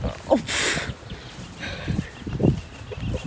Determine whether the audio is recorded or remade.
recorded